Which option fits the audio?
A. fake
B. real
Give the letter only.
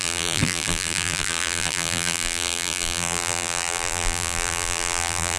A